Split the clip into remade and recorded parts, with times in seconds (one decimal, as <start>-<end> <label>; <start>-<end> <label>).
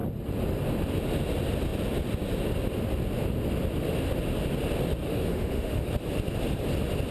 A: 0.0-5.1 recorded; 5.1-5.9 remade; 5.9-7.1 recorded